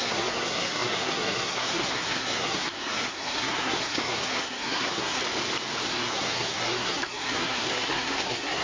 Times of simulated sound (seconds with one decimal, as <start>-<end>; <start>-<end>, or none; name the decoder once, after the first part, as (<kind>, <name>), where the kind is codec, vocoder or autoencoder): 0.0-5.2 (codec, SNAC); 5.9-8.6